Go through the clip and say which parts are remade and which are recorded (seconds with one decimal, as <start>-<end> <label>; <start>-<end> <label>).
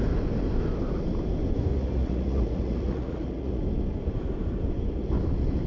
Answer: 0.0-1.7 recorded; 1.7-3.6 remade; 3.6-5.7 recorded